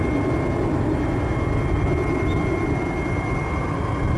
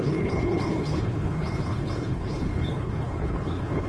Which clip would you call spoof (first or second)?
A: second